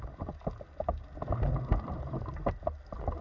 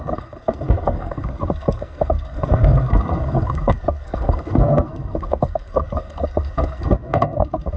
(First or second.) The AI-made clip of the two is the second